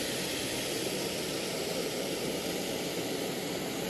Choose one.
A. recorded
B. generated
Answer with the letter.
A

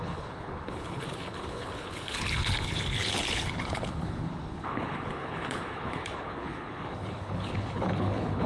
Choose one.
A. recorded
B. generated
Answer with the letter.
B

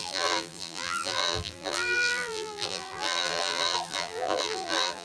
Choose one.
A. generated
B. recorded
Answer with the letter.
A